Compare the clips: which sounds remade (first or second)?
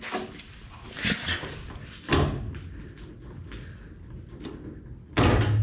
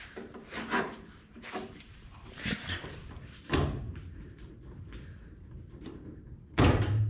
second